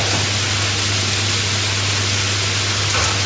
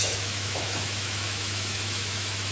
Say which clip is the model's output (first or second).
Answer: second